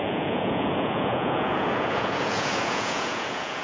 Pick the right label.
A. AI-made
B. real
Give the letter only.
A